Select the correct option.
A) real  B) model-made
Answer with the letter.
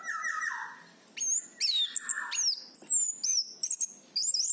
A